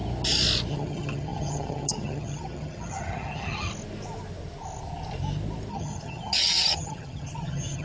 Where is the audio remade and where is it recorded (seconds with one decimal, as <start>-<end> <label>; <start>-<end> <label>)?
0.0-0.7 recorded; 0.7-3.7 remade; 3.7-5.7 recorded; 5.7-7.8 remade